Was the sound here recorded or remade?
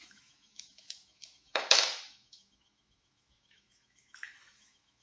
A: remade